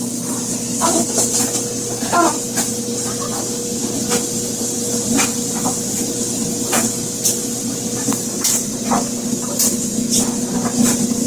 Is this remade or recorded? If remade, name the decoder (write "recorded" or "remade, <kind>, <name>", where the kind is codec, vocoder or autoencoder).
remade, vocoder, BigVGAN v2